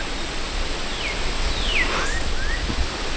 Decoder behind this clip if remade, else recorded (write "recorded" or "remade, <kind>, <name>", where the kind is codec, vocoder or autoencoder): recorded